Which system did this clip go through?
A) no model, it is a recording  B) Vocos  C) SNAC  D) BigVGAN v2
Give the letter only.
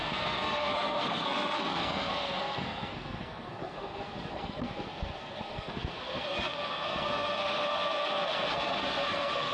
C